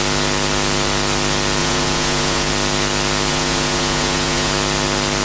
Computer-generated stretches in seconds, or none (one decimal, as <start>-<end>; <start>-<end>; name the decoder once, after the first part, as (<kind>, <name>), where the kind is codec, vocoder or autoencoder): 1.6-2.5 (vocoder, Vocos); 3.3-4.5